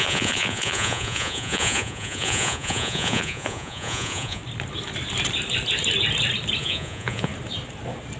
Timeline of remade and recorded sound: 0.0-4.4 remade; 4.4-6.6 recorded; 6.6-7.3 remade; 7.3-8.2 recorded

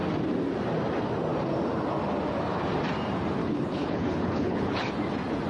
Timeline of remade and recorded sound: 0.0-3.4 recorded; 3.4-4.9 remade; 4.9-5.5 recorded

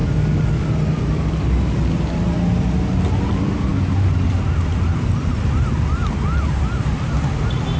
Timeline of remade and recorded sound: 0.0-7.8 recorded